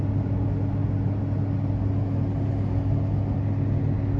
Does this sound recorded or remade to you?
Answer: recorded